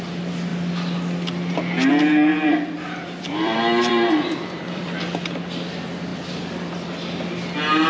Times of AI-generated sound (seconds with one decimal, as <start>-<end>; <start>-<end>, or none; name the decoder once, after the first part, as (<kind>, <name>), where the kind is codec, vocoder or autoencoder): 2.3-5.0 (vocoder, BigVGAN v2)